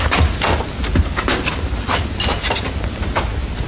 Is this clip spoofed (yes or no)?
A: no